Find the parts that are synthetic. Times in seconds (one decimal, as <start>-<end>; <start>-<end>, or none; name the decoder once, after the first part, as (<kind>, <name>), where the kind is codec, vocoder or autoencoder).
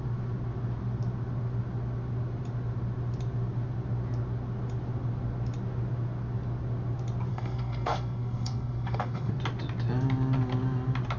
7.3-9.3 (codec, SNAC)